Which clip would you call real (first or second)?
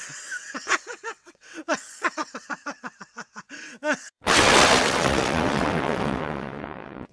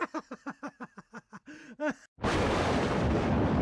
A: second